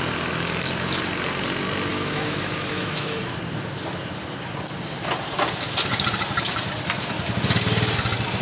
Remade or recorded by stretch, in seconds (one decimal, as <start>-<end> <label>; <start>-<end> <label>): 0.0-1.9 recorded; 1.9-3.2 remade; 3.2-8.4 recorded